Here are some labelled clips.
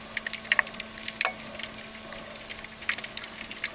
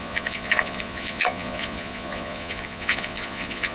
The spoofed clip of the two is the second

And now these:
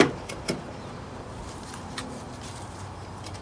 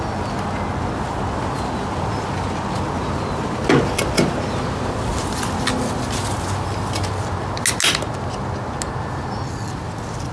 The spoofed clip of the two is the first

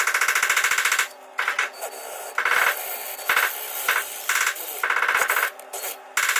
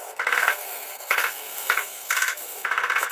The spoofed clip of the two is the second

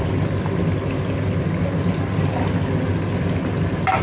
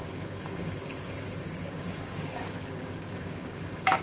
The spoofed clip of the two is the second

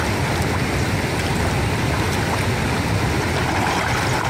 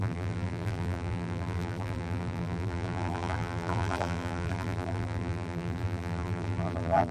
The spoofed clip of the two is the second